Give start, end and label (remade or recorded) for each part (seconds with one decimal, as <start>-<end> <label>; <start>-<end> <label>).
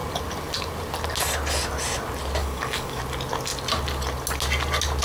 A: 0.0-2.4 recorded; 2.4-3.0 remade; 3.0-5.0 recorded